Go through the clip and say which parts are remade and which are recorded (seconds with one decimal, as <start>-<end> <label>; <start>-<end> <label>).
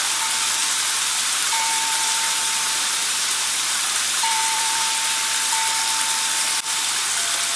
0.0-0.6 recorded; 0.6-4.8 remade; 4.8-7.6 recorded